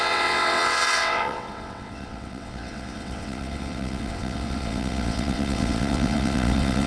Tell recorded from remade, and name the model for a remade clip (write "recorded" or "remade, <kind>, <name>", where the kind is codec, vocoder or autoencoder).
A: remade, vocoder, WaveNeXt